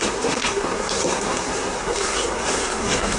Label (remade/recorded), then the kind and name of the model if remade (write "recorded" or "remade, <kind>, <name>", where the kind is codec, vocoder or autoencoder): remade, codec, SNAC